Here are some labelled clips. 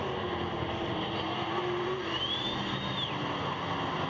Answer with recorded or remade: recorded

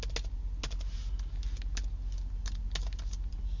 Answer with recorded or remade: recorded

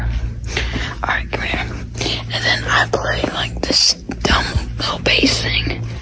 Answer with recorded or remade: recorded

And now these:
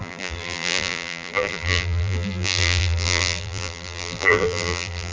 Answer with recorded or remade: remade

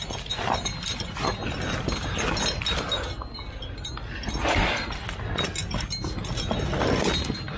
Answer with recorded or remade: recorded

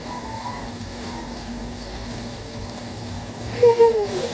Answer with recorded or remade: remade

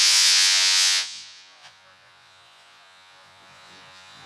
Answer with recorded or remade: remade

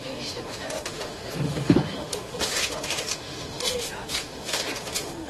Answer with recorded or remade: remade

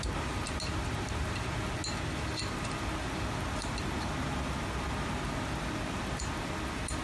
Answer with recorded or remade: recorded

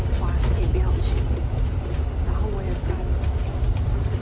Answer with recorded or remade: recorded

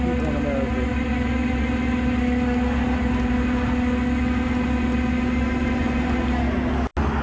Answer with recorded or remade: recorded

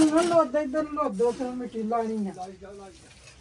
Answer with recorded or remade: recorded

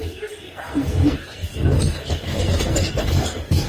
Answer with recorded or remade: remade